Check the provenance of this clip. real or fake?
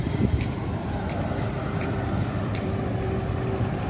fake